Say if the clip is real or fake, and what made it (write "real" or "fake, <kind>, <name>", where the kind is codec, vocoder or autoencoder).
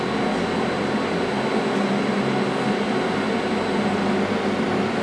real